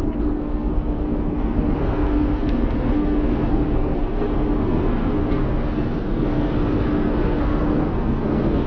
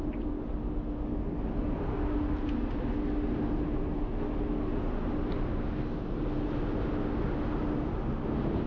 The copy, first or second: first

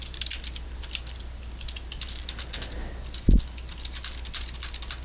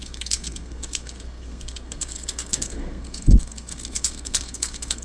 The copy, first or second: second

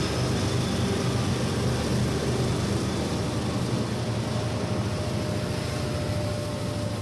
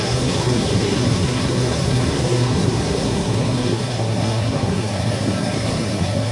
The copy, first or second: second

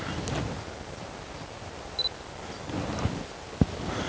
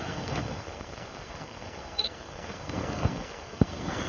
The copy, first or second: second